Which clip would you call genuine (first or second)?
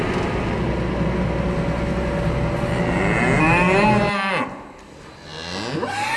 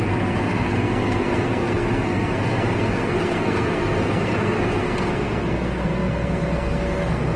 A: first